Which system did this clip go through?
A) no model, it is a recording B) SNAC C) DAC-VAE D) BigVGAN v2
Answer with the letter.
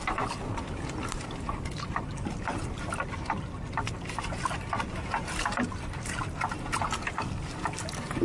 A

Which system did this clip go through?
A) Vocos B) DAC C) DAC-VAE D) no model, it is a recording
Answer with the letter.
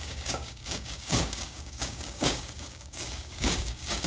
B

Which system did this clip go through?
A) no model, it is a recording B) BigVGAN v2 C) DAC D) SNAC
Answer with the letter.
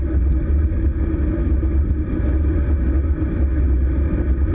A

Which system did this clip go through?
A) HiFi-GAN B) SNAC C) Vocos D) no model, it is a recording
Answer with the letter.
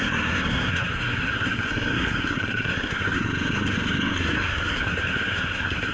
B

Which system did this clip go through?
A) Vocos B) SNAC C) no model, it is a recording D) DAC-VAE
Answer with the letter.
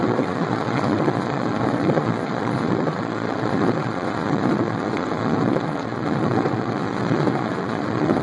A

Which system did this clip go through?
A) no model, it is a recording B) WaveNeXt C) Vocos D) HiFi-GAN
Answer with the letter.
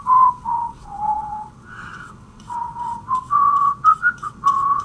B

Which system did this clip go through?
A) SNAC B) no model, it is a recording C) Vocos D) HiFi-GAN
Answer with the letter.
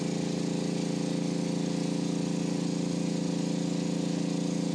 B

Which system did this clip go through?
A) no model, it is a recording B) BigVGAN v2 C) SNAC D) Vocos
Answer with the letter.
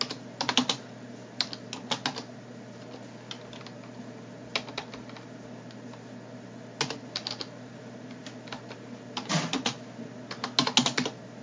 A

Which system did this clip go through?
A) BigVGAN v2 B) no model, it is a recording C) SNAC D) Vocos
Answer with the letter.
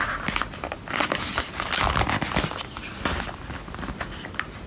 B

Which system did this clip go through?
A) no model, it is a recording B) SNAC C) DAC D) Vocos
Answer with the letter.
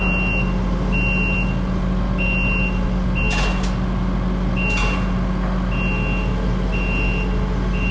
A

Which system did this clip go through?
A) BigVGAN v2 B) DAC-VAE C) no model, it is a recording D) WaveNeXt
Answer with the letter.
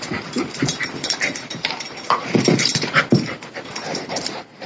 A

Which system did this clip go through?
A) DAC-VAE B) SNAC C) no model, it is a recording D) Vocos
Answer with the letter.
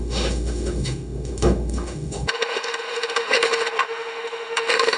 A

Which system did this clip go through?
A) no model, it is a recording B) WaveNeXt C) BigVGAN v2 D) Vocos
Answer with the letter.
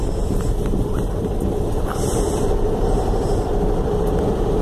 C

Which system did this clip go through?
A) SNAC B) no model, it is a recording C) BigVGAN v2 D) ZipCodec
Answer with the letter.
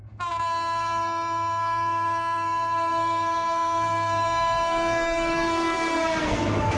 A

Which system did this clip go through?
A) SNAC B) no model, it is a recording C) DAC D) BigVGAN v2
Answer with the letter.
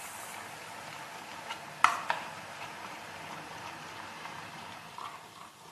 B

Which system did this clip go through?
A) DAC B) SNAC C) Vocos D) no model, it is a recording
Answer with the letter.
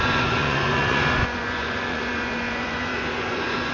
C